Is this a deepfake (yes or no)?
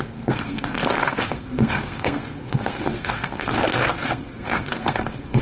yes